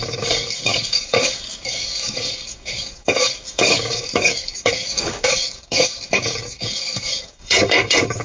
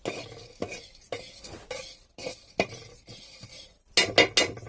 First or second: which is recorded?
second